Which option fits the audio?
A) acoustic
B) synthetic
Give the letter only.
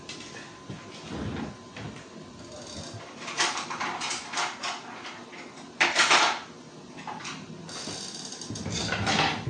A